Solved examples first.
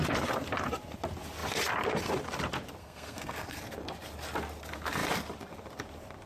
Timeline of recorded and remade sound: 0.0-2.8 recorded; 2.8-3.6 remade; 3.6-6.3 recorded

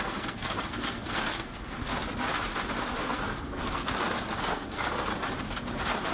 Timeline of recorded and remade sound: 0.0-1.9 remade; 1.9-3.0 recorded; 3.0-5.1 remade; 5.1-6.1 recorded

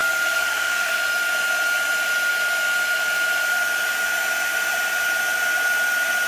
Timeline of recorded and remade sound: 0.0-1.0 remade; 1.0-6.3 recorded

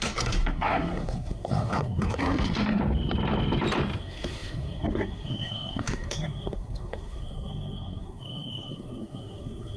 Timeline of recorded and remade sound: 0.0-2.8 remade; 2.8-4.0 recorded; 4.0-9.8 remade

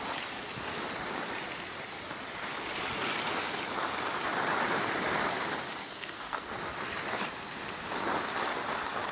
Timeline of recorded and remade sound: 0.0-5.8 recorded; 5.8-6.5 remade; 6.5-9.1 recorded